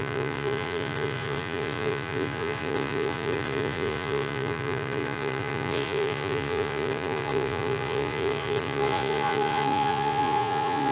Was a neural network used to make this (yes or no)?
yes